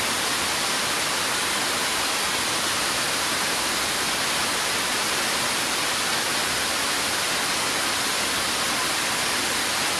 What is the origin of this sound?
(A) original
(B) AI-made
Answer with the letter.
A